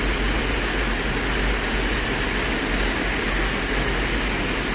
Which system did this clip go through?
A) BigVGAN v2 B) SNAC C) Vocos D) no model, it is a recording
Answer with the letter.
D